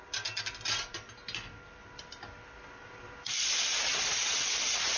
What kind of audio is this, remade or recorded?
recorded